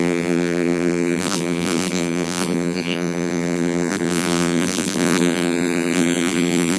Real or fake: fake